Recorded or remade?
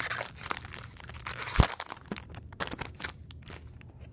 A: recorded